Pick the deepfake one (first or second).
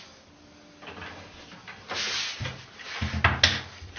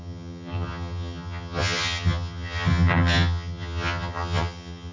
second